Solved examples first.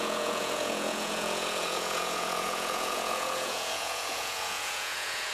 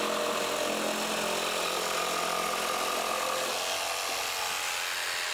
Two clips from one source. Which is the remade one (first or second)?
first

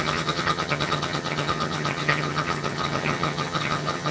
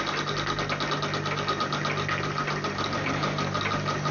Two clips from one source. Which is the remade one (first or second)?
first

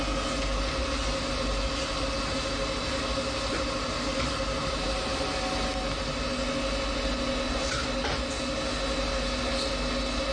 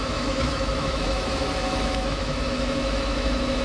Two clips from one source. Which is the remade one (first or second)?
second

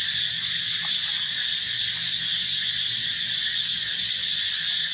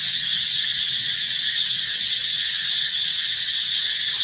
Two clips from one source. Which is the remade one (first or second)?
second